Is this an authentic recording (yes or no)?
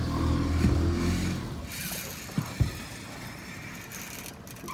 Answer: yes